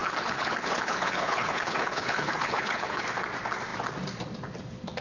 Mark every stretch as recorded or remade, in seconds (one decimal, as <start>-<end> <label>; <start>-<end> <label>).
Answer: 0.0-3.0 remade; 3.0-5.0 recorded